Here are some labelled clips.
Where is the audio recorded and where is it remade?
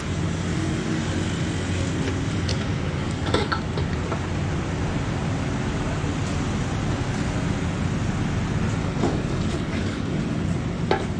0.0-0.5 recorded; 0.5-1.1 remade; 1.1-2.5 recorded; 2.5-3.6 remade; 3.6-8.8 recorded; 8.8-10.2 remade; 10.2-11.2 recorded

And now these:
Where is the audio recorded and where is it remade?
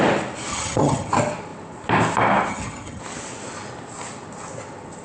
0.0-0.5 recorded; 0.5-1.1 remade; 1.1-2.5 recorded; 2.5-3.0 remade; 3.0-5.0 recorded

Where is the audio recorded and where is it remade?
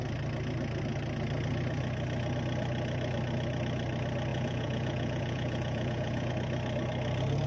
0.0-4.3 recorded; 4.3-6.3 remade; 6.3-7.5 recorded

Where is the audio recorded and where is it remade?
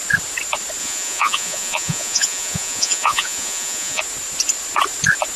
0.0-0.8 recorded; 0.8-4.0 remade; 4.0-5.4 recorded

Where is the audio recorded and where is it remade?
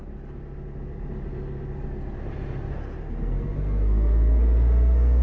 0.0-3.0 recorded; 3.0-5.2 remade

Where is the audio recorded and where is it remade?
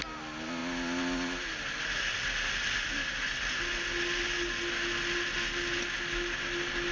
0.0-6.9 recorded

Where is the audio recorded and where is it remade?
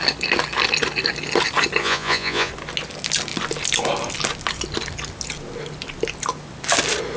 0.0-1.8 recorded; 1.8-2.5 remade; 2.5-7.2 recorded